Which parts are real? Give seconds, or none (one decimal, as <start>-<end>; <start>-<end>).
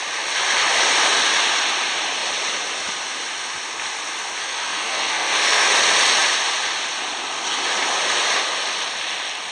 0.0-4.4; 5.7-9.5